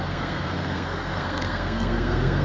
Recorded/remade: remade